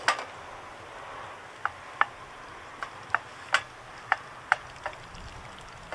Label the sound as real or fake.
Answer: real